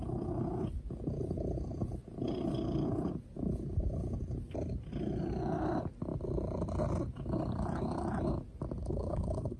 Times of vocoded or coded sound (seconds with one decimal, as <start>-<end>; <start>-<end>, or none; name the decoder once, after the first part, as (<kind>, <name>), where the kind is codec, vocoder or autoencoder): 8.8-9.6 (codec, HILCodec)